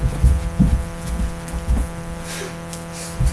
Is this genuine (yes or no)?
yes